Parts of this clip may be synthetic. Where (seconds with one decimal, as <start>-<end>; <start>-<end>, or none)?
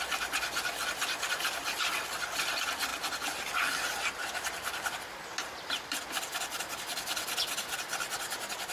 none